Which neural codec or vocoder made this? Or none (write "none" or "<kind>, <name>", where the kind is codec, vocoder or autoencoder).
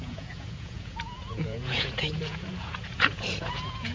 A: vocoder, Vocos